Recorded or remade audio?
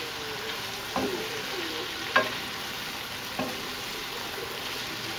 recorded